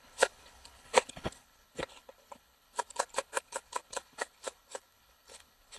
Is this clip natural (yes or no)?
no